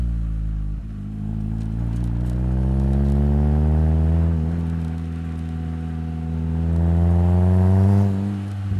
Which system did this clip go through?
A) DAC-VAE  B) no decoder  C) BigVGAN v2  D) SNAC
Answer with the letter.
B